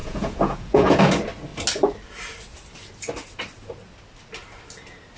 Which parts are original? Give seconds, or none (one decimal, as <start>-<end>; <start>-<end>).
1.0-5.2